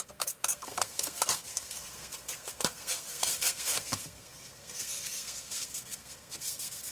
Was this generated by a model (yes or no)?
yes